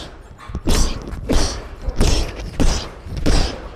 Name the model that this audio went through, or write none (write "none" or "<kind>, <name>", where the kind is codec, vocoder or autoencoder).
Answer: vocoder, BigVGAN v2